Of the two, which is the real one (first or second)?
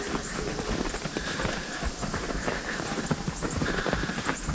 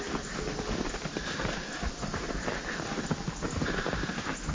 second